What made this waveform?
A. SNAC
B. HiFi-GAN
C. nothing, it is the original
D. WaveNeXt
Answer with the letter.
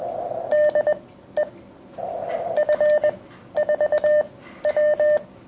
C